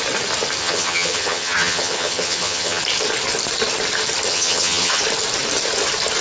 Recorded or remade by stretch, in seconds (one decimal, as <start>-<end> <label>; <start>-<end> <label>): 0.0-0.6 recorded; 0.6-2.8 remade; 2.8-4.3 recorded; 4.3-5.0 remade; 5.0-6.2 recorded